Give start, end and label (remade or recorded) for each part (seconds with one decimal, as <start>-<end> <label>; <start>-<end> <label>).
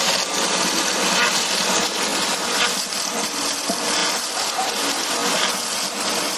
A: 0.0-4.0 recorded; 4.0-4.7 remade; 4.7-6.4 recorded